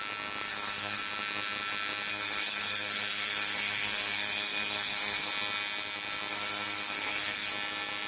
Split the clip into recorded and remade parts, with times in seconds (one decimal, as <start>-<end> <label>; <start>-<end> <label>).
0.0-0.5 recorded; 0.5-1.0 remade; 1.0-2.1 recorded; 2.1-5.3 remade; 5.3-6.3 recorded; 6.3-7.5 remade; 7.5-8.1 recorded